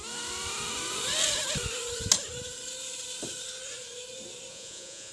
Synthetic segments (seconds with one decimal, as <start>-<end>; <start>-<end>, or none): 4.5-5.1